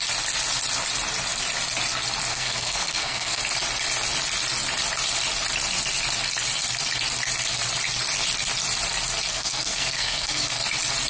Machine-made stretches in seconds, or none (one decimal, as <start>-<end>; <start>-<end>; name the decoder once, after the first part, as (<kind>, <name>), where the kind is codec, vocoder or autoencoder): 2.3-3.4 (codec, SNAC); 9.3-10.6